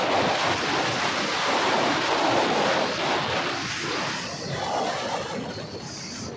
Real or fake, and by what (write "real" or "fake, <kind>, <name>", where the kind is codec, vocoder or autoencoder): real